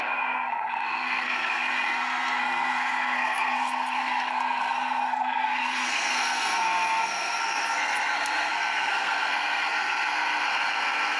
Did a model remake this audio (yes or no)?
yes